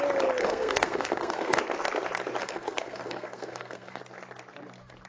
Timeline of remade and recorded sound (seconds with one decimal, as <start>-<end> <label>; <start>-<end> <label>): 0.0-0.4 recorded; 0.4-1.6 remade; 1.6-2.4 recorded; 2.4-4.0 remade; 4.0-5.1 recorded